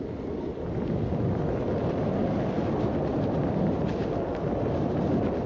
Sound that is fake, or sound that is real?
real